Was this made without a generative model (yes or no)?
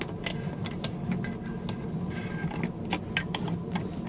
yes